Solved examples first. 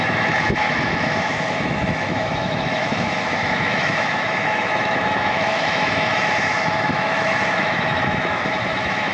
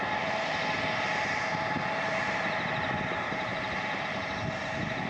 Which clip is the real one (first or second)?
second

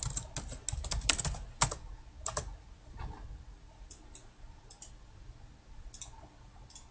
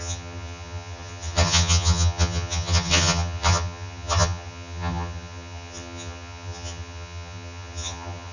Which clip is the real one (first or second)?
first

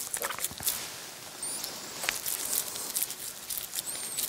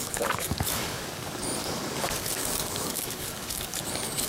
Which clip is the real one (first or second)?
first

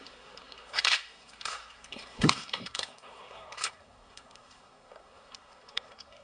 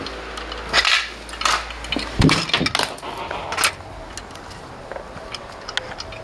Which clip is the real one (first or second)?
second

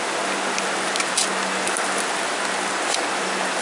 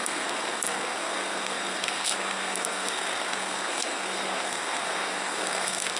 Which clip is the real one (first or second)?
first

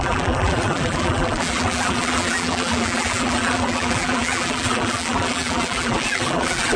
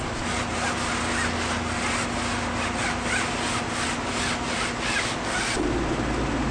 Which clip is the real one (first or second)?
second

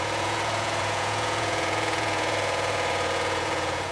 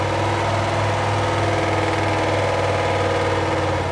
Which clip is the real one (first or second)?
second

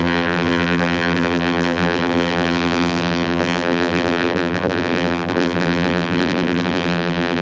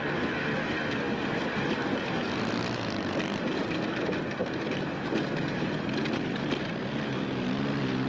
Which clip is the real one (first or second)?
second